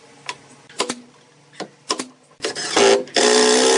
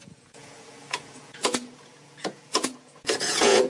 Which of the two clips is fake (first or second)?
second